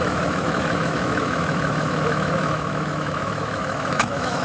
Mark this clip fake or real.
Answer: fake